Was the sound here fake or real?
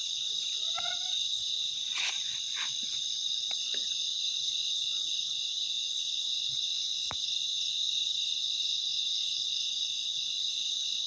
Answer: real